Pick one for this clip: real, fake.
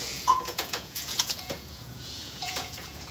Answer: fake